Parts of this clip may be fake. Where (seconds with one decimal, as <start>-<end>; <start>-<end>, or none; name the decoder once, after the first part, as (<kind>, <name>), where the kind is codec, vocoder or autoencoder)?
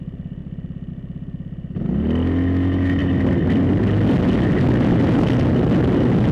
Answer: none